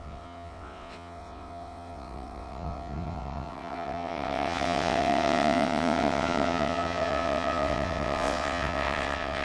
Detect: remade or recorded remade